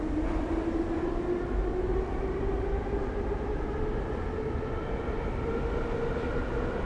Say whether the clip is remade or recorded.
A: recorded